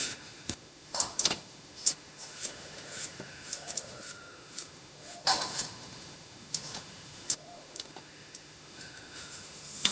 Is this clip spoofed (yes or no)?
yes